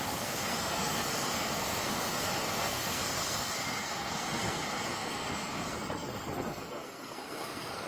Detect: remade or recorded remade